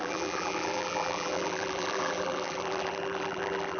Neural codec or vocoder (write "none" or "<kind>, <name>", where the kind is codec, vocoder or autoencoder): vocoder, BigVGAN v2